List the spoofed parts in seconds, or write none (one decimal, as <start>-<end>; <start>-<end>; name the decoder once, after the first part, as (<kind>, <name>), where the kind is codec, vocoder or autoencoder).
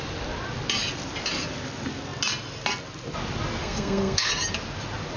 3.6-4.3 (codec, SNAC)